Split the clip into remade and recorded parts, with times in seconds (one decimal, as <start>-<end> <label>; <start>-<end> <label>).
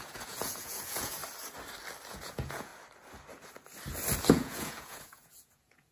0.0-1.2 remade; 1.2-2.1 recorded; 2.1-2.7 remade; 2.7-4.3 recorded; 4.3-5.9 remade